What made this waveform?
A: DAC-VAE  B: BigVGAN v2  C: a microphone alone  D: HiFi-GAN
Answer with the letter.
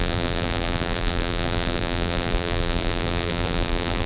B